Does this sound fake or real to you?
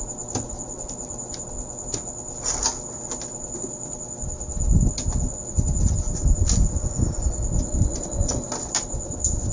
real